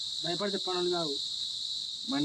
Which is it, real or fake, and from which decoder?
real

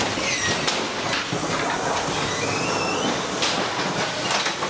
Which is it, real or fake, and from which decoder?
real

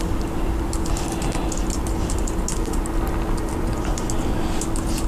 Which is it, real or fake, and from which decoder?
real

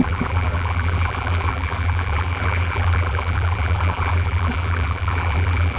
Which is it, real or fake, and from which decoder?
fake, vocoder, BigVGAN v2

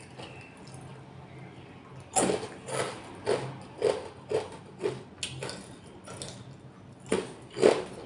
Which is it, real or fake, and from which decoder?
real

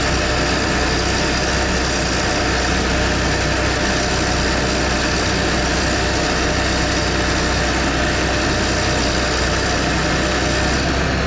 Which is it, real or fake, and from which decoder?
real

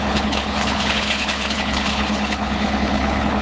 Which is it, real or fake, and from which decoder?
fake, codec, HILCodec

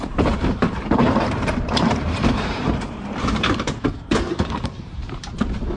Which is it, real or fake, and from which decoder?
fake, vocoder, BigVGAN v2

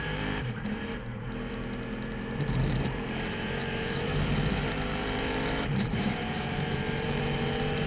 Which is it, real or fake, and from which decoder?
fake, vocoder, BigVGAN v2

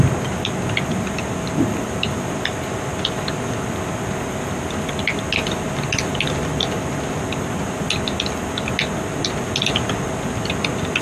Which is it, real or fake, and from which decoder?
real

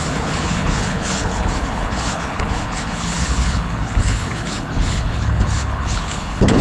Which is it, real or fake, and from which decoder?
fake, codec, HILCodec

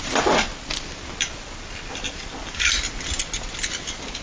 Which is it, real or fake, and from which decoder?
real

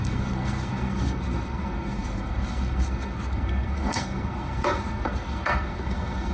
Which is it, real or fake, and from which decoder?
fake, codec, SNAC